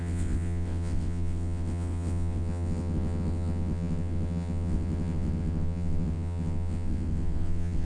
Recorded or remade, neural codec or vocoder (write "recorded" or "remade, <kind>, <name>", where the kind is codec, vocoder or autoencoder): remade, vocoder, WaveNeXt